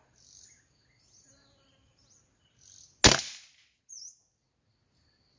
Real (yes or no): yes